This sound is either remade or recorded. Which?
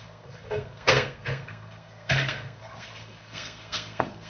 remade